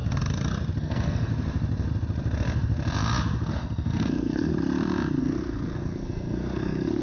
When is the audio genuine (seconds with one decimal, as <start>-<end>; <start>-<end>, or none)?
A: 0.0-0.8; 1.3-3.5; 4.5-5.2